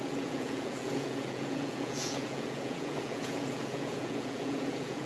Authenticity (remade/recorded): remade